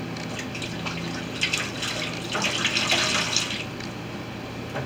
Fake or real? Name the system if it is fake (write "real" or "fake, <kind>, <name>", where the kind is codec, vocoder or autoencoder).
real